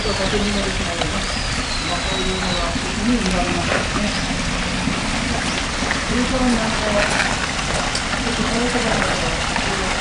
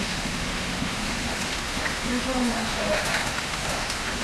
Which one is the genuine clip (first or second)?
first